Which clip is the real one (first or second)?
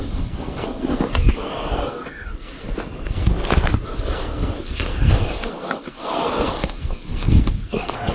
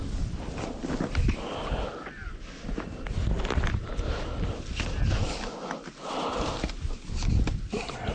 second